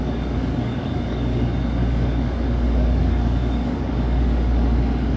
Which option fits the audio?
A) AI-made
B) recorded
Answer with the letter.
A